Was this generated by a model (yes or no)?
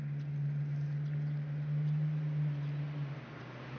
no